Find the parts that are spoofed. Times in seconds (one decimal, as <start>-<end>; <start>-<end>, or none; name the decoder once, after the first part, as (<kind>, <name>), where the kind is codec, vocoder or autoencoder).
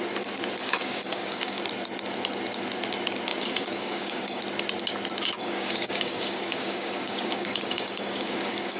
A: 0.6-1.6 (codec, DAC); 3.3-4.4; 5.4-8.8